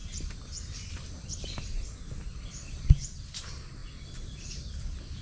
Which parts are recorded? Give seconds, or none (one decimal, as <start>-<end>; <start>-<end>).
0.0-5.2

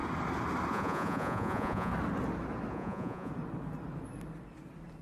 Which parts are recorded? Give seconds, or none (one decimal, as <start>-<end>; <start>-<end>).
0.0-0.7; 1.9-2.7; 3.3-5.0